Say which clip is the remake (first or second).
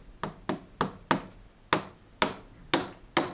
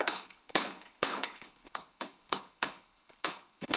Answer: second